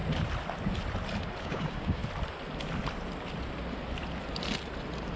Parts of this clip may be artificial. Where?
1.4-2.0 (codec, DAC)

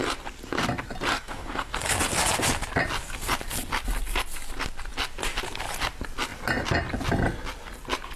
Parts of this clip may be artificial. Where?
1.1-1.7 (codec, DAC)

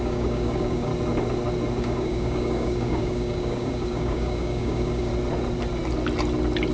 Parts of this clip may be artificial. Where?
0.0-0.9 (codec, DAC); 1.8-5.1